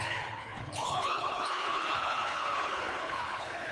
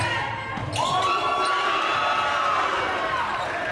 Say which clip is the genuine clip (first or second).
second